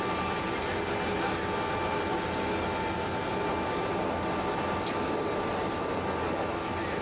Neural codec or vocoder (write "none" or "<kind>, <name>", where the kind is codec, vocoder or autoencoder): none